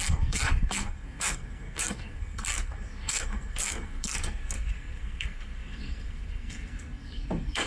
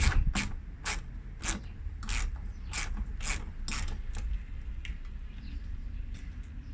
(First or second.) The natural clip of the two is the second